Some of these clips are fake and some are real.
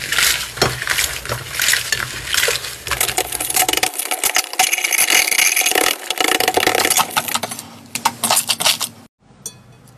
real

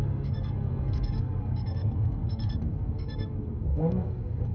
fake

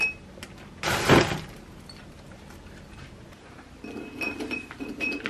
real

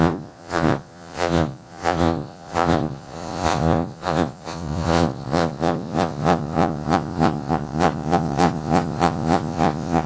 fake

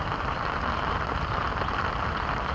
fake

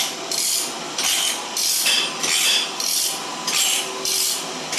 real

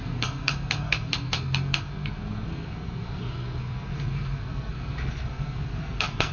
fake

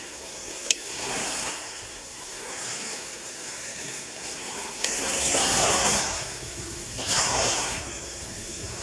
fake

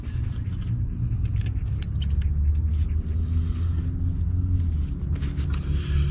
real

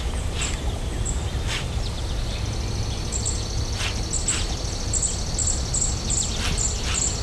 real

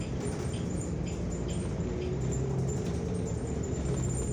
real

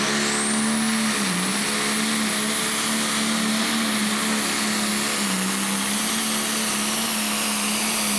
real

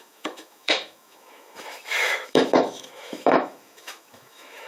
fake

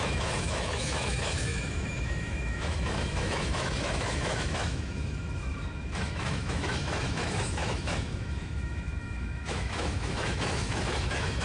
fake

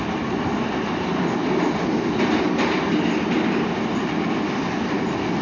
real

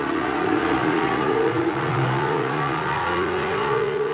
fake